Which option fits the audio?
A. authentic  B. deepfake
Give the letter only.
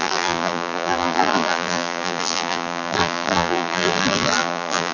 B